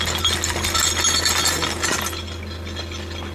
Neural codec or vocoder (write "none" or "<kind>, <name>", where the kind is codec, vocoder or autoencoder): none